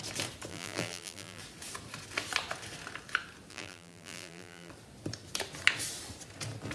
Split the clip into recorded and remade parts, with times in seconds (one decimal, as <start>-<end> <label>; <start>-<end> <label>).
0.0-0.5 recorded; 0.5-1.4 remade; 1.4-3.5 recorded; 3.5-4.7 remade; 4.7-6.7 recorded